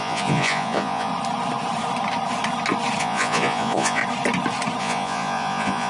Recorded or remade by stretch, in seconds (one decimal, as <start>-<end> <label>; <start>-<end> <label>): 0.0-1.1 remade; 1.1-3.0 recorded; 3.0-4.0 remade; 4.0-4.8 recorded; 4.8-5.9 remade